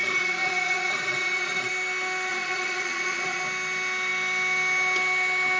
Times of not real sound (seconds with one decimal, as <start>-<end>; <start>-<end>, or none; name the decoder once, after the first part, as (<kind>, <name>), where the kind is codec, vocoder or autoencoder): 0.0-1.7 (vocoder, Vocos); 2.3-3.4